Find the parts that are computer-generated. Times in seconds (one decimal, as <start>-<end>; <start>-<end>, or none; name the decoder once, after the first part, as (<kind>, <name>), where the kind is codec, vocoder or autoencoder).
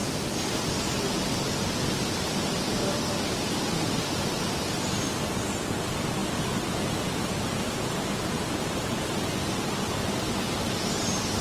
none